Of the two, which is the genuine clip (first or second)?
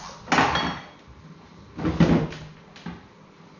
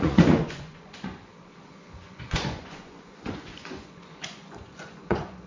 first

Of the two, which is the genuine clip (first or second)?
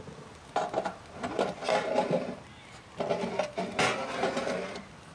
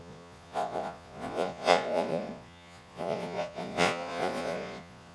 first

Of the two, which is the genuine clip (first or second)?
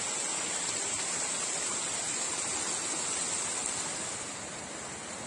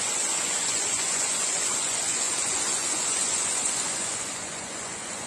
first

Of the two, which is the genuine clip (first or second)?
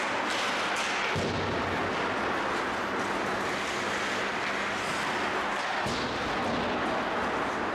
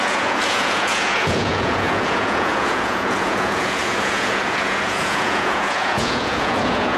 first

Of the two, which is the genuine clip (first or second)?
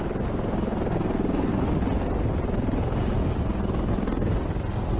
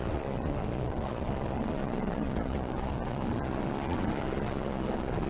first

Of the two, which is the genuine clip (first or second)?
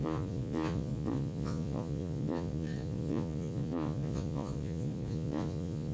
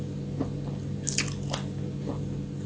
second